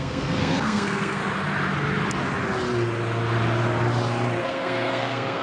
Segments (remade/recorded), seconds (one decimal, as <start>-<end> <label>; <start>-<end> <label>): 0.0-1.2 remade; 1.2-4.4 recorded; 4.4-5.4 remade